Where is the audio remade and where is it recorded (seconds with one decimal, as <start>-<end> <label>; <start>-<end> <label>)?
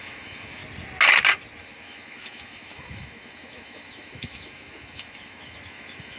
0.0-0.6 remade; 0.6-1.6 recorded; 1.6-6.2 remade